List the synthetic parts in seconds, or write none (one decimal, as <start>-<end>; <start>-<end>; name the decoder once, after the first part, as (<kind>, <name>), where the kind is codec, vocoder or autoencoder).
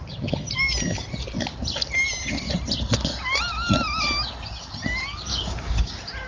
5.3-5.8 (codec, DAC)